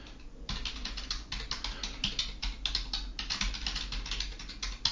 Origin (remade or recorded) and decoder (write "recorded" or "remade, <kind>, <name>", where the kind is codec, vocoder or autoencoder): recorded